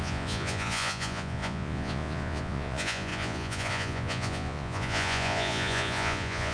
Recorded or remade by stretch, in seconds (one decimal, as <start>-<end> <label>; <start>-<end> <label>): 0.0-6.5 remade